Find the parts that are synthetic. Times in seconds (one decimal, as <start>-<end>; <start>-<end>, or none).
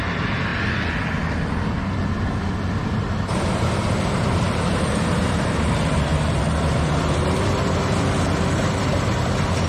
2.8-6.4